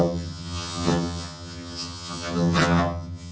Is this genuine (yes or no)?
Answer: no